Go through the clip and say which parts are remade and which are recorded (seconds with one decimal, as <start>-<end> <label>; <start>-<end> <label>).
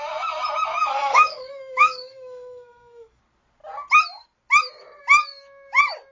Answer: 0.0-0.8 recorded; 0.8-3.2 remade; 3.2-6.1 recorded